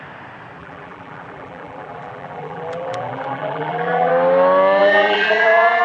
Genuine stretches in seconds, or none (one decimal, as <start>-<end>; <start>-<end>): 0.0-0.6; 4.1-4.8